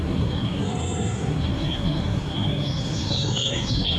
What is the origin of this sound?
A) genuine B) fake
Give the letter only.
B